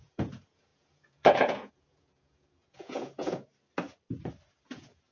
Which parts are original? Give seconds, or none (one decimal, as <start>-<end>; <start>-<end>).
3.5-4.5